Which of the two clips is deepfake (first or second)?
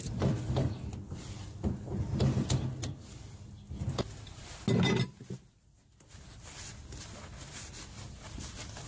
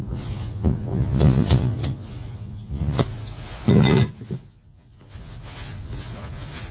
second